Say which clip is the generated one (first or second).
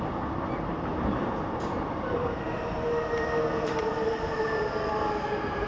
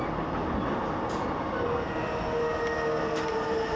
first